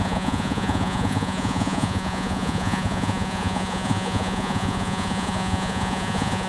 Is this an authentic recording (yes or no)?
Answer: no